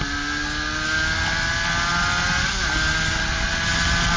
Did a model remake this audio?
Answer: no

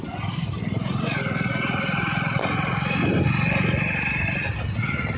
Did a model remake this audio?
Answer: no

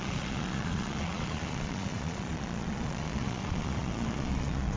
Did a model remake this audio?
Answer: yes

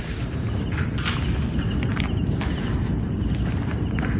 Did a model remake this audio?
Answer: yes